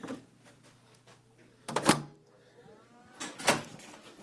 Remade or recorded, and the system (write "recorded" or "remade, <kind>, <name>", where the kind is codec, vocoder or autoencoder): recorded